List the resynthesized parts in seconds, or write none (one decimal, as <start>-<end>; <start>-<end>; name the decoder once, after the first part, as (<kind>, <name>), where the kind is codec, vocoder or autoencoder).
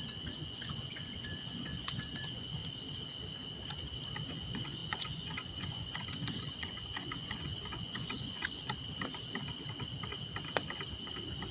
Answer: 0.0-2.6 (vocoder, Vocos); 4.3-8.6